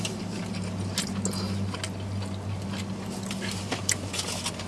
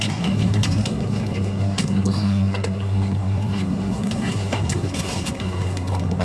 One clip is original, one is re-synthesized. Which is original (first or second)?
first